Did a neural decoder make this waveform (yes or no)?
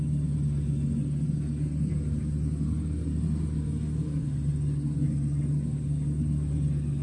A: no